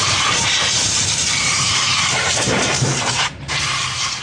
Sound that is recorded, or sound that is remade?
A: remade